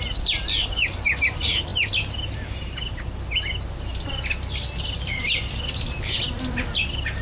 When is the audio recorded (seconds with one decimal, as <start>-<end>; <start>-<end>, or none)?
0.0-7.2